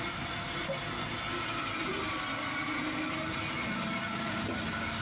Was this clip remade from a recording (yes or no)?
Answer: no